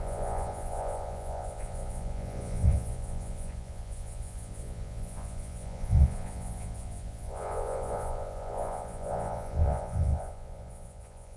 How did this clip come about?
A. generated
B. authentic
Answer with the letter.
A